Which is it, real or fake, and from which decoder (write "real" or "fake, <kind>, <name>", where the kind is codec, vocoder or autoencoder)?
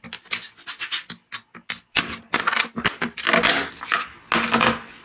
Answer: real